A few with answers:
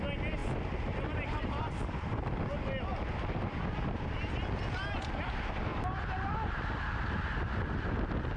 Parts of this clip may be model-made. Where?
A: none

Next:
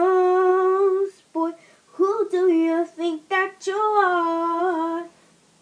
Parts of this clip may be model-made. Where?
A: none

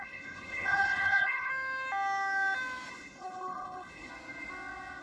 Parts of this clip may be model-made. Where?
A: 0.0-1.5 (codec, HILCodec); 2.9-4.1

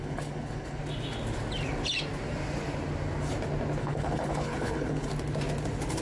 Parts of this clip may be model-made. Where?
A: 0.0-0.8 (codec, HILCodec); 3.8-5.1

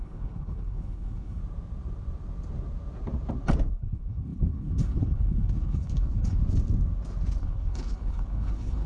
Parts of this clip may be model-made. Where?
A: 0.0-1.4 (codec, HILCodec); 3.7-6.4; 7.4-8.9

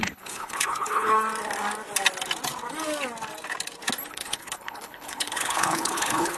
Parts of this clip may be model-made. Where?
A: 0.0-1.1 (codec, HILCodec); 4.1-6.4

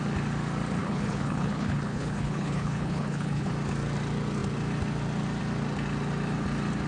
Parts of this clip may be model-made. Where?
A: 0.8-3.5 (codec, HILCodec)

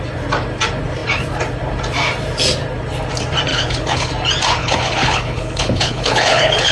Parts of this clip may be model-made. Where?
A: 3.5-4.1 (codec, HILCodec); 4.6-6.7